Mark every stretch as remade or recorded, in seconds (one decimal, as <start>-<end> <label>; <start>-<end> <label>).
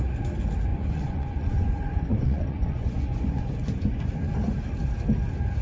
0.0-0.7 recorded; 0.7-4.1 remade; 4.1-5.6 recorded